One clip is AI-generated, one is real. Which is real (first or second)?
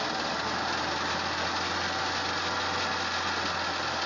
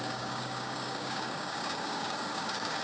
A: first